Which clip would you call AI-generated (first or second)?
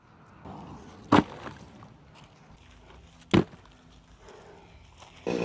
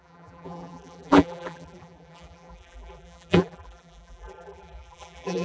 second